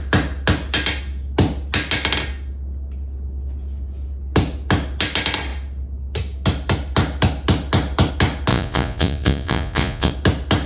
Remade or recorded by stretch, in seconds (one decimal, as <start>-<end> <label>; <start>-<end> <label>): 0.0-8.5 recorded; 8.5-10.1 remade; 10.1-10.7 recorded